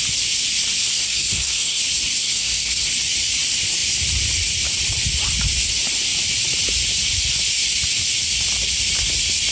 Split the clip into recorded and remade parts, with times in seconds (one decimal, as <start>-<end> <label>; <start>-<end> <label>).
0.0-0.8 recorded; 0.8-1.8 remade; 1.8-2.2 recorded; 2.2-2.9 remade; 2.9-9.5 recorded